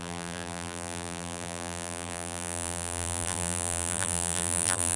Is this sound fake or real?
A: fake